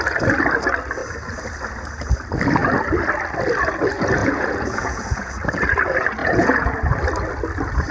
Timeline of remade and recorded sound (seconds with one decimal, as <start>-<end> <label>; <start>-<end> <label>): 0.0-4.2 recorded; 4.2-5.3 remade; 5.3-6.2 recorded; 6.2-6.7 remade; 6.7-7.9 recorded